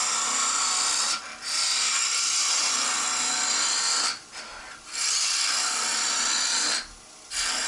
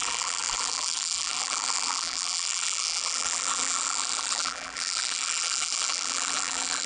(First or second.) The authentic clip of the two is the first